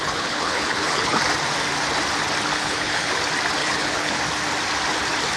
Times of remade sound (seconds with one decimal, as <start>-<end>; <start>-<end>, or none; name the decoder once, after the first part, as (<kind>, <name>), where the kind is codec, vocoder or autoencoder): 0.0-1.2 (codec, HILCodec); 2.5-3.1; 3.6-4.2